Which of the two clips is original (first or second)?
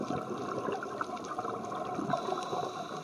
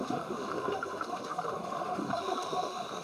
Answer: first